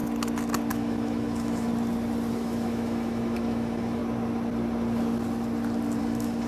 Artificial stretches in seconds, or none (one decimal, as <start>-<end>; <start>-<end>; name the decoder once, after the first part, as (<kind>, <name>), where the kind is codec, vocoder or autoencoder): 0.7-1.7 (autoencoder, DAC-VAE); 2.3-4.0; 6.0-6.5